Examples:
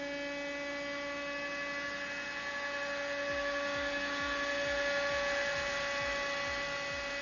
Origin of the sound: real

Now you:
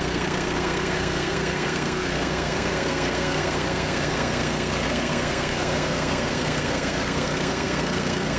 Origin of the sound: fake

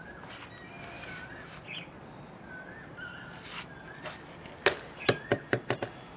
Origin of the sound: real